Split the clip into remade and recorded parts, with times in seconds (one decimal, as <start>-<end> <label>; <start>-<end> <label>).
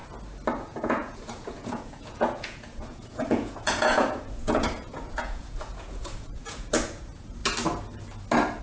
0.0-0.6 recorded; 0.6-7.4 remade; 7.4-8.6 recorded